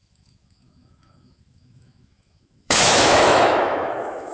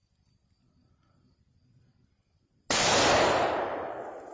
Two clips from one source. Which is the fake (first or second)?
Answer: first